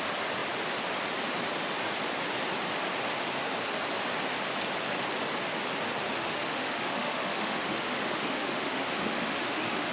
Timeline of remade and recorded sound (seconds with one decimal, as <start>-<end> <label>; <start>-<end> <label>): 0.0-6.1 recorded; 6.1-9.9 remade